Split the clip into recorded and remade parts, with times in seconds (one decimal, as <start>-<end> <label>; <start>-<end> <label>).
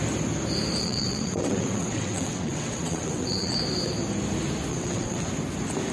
0.0-0.8 recorded; 0.8-3.6 remade; 3.6-4.7 recorded; 4.7-5.3 remade; 5.3-5.9 recorded